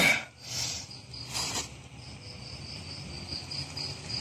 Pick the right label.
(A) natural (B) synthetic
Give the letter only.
A